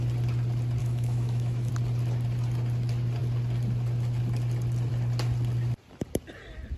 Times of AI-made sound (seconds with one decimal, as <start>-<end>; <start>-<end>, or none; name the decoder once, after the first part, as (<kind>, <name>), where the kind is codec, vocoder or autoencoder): 0.8-1.7 (autoencoder, DAC-VAE)